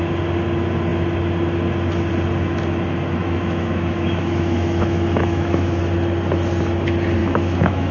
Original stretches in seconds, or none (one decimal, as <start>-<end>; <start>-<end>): 0.0-3.2; 5.8-7.2